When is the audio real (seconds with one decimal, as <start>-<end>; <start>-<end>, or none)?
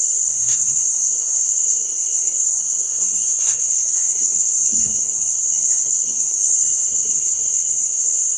none